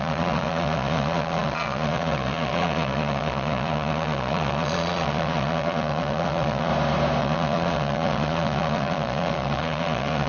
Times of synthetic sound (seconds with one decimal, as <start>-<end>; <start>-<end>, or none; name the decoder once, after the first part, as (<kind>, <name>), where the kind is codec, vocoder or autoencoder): 0.0-6.7 (vocoder, Vocos); 7.2-10.3